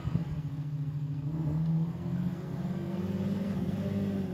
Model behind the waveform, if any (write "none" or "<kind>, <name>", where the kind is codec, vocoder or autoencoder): codec, SNAC